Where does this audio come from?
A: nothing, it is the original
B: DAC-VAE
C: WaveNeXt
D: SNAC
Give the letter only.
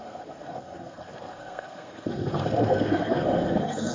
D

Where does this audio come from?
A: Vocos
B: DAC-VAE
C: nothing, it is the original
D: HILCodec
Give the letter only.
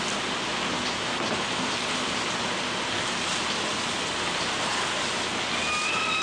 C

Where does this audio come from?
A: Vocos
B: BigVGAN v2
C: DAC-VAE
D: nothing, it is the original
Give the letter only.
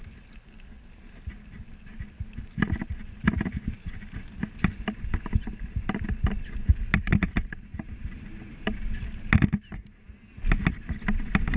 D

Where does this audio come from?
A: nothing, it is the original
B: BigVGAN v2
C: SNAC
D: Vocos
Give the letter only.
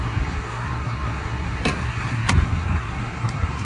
C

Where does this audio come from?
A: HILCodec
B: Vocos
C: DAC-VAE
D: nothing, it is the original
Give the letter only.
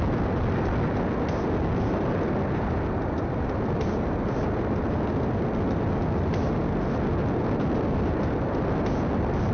D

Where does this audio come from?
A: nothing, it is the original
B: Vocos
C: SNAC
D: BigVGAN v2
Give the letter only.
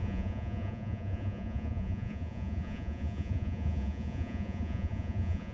B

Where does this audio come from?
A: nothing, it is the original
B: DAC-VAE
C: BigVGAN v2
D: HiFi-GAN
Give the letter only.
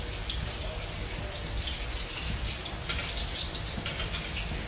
A